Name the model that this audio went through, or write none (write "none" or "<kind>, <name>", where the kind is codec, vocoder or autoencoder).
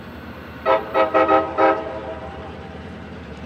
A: vocoder, BigVGAN v2